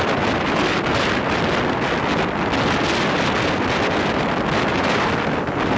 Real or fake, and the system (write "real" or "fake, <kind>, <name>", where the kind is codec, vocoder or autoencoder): real